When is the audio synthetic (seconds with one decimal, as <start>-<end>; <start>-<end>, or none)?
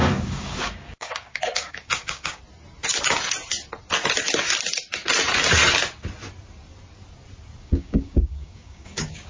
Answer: 0.0-2.4; 7.6-9.3